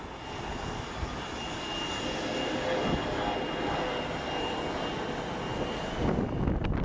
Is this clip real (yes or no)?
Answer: yes